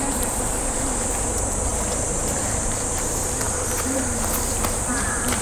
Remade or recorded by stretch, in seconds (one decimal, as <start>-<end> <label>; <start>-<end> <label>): 0.0-1.7 remade; 1.7-2.4 recorded; 2.4-5.4 remade

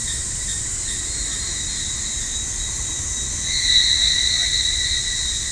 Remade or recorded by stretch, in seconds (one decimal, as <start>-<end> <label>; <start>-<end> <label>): 0.0-0.6 remade; 0.6-5.5 recorded

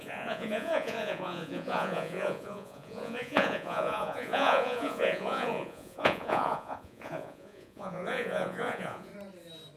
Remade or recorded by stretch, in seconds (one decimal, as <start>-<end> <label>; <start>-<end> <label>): 0.0-9.1 remade; 9.1-9.8 recorded

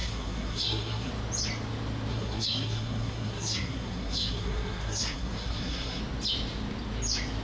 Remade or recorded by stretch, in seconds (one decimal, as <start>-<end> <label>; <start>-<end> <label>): 0.0-1.1 remade; 1.1-2.1 recorded; 2.1-6.0 remade; 6.0-7.4 recorded